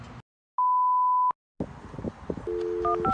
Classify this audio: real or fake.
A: real